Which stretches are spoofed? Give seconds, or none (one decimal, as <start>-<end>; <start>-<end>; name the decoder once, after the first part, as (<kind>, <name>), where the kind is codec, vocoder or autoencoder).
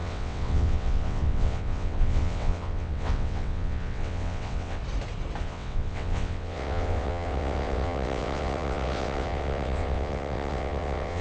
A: 0.0-4.8 (vocoder, WaveNeXt); 5.4-11.2